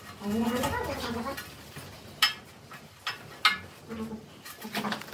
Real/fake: real